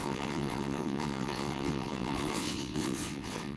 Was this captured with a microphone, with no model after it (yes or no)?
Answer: no